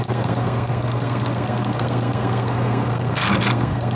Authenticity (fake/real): fake